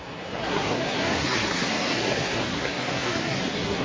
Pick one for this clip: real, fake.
fake